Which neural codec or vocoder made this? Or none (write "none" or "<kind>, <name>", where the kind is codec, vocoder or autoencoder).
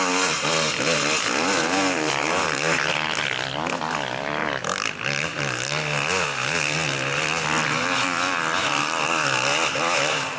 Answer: none